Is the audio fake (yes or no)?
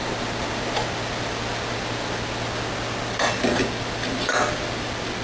no